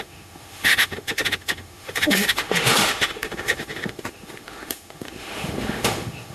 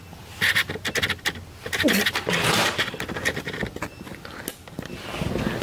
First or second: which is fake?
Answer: first